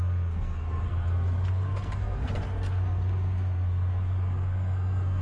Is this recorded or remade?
remade